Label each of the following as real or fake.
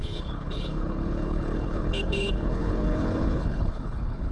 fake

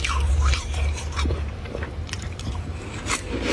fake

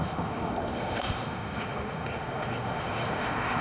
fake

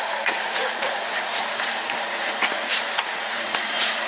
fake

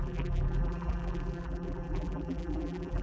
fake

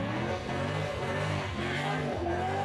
fake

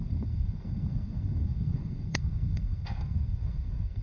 fake